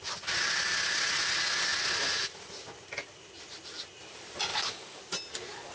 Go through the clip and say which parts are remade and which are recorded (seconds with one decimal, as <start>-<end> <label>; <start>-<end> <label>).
0.0-4.5 recorded; 4.5-5.0 remade; 5.0-5.7 recorded